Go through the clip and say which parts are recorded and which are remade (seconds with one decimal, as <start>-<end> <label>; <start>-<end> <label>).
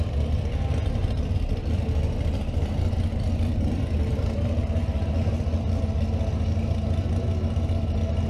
0.0-1.0 recorded; 1.0-4.6 remade; 4.6-8.3 recorded